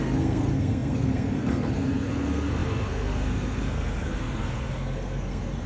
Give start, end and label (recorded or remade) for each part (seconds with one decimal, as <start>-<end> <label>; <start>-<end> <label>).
0.0-5.7 remade